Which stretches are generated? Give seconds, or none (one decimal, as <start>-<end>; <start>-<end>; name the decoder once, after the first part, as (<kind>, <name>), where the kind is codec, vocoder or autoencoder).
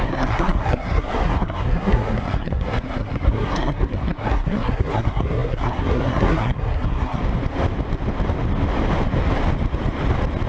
0.0-7.2 (codec, SNAC)